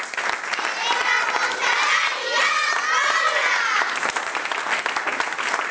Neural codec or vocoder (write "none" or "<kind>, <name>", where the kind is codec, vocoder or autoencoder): none